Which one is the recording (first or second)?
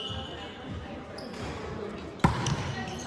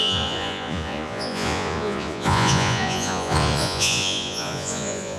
first